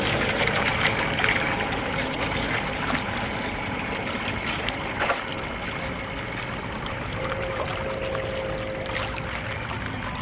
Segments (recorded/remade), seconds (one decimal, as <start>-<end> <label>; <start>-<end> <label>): 0.0-5.3 remade; 5.3-6.6 recorded; 6.6-7.7 remade; 7.7-10.2 recorded

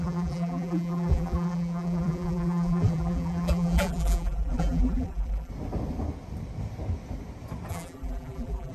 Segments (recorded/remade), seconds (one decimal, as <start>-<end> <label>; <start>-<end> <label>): 0.0-5.5 remade; 5.5-7.7 recorded; 7.7-8.7 remade

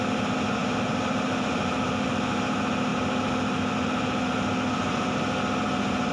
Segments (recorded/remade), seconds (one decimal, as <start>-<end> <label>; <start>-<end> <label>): 0.0-0.6 recorded; 0.6-1.9 remade; 1.9-6.1 recorded